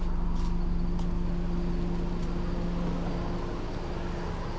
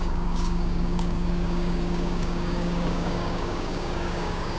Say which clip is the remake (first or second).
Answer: second